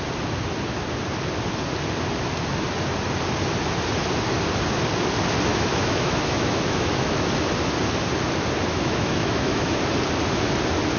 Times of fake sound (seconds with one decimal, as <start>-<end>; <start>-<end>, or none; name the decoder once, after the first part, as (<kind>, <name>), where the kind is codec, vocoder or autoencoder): 5.5-7.3 (autoencoder, DAC-VAE); 8.7-9.8